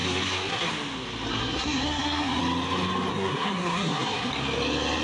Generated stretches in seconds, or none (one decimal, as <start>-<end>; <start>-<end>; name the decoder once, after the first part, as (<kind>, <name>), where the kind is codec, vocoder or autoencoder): 0.0-0.7 (codec, SNAC); 1.3-2.4; 3.1-4.3